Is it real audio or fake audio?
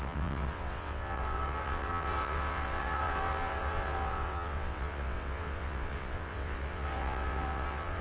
fake